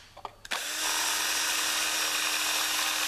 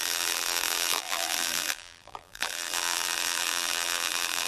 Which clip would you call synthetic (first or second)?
second